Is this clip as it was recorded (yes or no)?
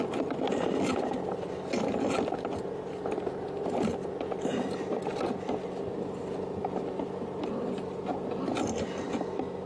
yes